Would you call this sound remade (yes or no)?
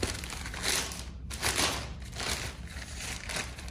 no